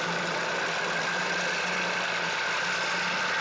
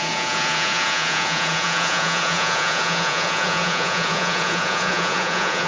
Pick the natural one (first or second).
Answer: first